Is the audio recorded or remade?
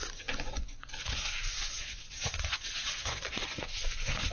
remade